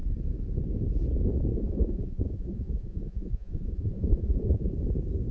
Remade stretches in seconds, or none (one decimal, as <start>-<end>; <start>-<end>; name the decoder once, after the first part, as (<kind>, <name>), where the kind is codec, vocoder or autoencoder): 1.5-4.7 (vocoder, Vocos)